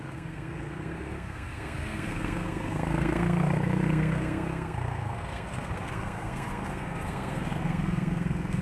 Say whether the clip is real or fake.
fake